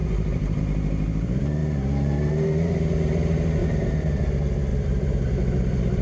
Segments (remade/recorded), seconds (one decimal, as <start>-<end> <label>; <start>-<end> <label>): 0.0-0.6 remade; 0.6-1.6 recorded; 1.6-2.7 remade; 2.7-3.6 recorded; 3.6-4.2 remade; 4.2-4.7 recorded; 4.7-5.4 remade; 5.4-6.0 recorded